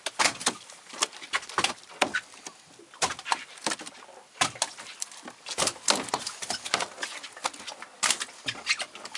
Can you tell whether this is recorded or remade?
recorded